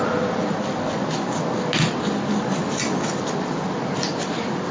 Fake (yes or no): no